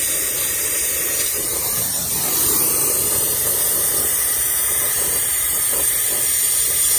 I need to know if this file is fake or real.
fake